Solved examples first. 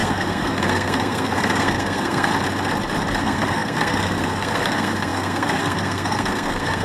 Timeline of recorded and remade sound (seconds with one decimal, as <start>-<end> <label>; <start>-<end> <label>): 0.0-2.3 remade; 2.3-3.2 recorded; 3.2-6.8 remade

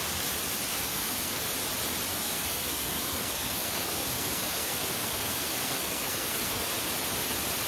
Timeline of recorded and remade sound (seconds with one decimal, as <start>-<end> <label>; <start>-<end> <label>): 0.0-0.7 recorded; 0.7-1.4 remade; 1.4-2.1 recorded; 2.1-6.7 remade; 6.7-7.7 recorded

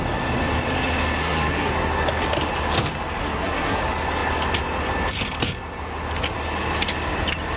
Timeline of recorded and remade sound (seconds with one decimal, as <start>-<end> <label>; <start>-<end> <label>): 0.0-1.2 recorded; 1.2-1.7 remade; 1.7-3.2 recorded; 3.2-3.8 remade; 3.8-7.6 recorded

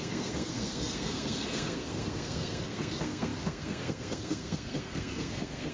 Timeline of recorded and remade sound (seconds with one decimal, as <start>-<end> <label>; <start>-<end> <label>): 0.0-5.7 remade

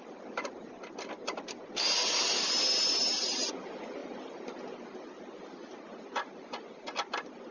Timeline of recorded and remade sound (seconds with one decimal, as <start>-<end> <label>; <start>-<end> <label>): 0.0-7.5 recorded

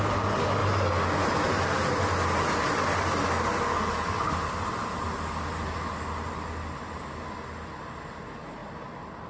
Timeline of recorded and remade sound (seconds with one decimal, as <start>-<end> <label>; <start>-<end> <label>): 0.0-9.3 recorded

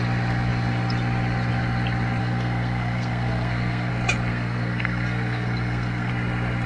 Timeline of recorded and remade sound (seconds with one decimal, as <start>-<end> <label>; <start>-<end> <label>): 0.0-2.2 recorded; 2.2-3.9 remade; 3.9-4.3 recorded; 4.3-6.1 remade; 6.1-6.7 recorded

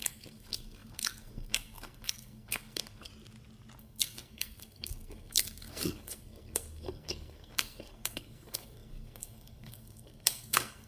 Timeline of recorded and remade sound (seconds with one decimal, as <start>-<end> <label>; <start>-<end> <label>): 0.0-3.1 remade; 3.1-3.8 recorded; 3.8-10.9 remade